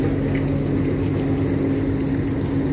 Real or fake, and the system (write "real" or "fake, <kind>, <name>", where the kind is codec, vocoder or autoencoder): real